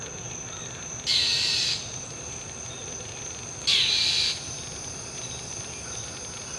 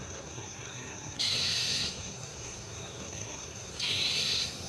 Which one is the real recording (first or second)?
first